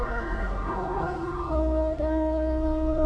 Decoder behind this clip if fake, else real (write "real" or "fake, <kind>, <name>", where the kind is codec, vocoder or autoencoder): fake, codec, SNAC